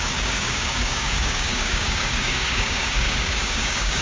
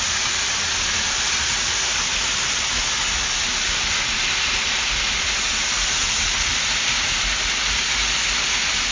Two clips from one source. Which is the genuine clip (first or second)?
second